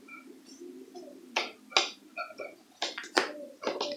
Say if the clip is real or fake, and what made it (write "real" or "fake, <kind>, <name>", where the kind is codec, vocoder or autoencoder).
real